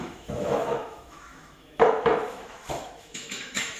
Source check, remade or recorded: remade